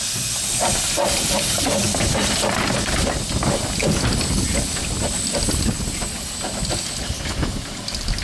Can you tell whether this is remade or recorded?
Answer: recorded